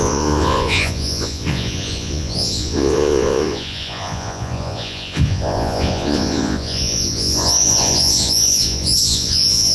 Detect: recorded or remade remade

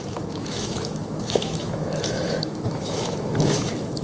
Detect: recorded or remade remade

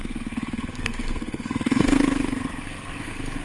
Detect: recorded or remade remade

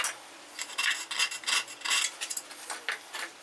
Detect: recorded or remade recorded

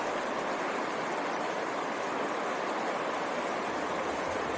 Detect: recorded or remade recorded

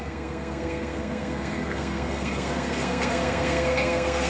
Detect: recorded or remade remade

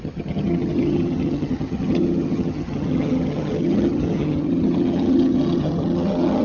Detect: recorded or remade remade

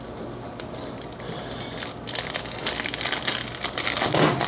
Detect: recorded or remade recorded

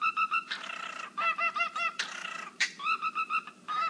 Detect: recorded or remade remade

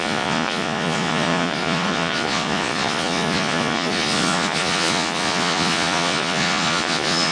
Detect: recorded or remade remade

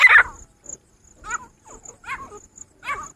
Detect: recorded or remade recorded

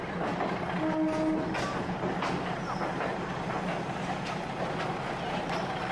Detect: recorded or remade recorded